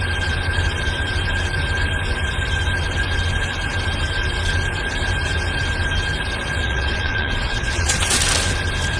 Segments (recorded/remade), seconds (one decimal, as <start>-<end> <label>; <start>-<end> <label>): 0.0-6.6 recorded; 6.6-8.2 remade; 8.2-9.0 recorded